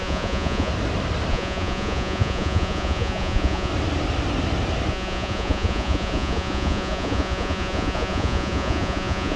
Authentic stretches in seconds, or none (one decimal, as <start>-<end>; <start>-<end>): 0.7-1.3; 3.7-4.9